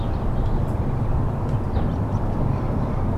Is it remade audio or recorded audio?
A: recorded